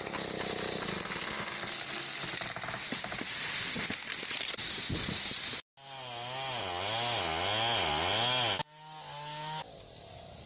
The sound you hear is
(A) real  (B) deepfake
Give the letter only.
A